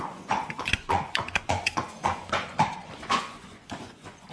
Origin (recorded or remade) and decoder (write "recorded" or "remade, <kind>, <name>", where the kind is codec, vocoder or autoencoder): remade, vocoder, Vocos